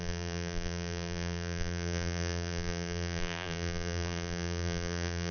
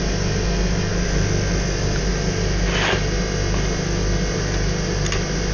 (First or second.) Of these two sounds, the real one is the second